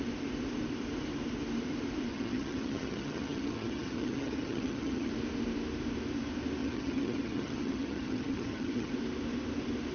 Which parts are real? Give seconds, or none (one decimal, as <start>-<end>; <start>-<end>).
0.0-2.1; 5.1-6.6; 8.9-9.9

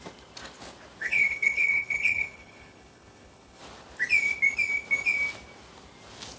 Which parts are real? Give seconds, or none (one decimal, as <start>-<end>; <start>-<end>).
0.0-1.0; 3.6-6.4

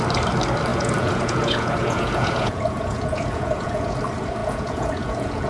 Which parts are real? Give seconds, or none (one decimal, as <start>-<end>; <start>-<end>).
0.0-0.7; 4.0-4.4

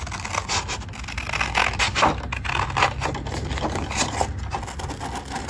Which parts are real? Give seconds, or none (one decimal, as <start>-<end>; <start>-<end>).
0.0-5.5

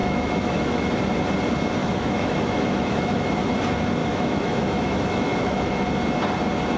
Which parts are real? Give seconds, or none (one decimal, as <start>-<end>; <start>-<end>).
1.0-1.8; 3.3-4.0; 5.7-6.8

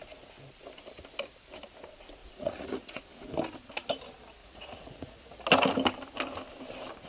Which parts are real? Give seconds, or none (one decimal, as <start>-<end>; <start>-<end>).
0.0-2.2; 3.0-4.4; 5.3-7.1

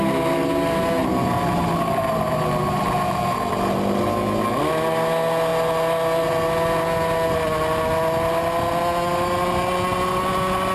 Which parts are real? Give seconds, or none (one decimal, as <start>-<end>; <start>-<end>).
0.0-10.7

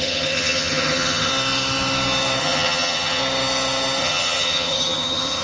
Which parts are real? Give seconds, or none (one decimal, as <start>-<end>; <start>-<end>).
1.3-2.4; 3.2-4.0